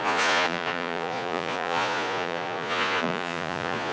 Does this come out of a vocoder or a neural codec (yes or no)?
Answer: yes